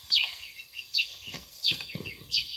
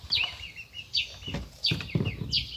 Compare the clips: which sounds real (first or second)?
second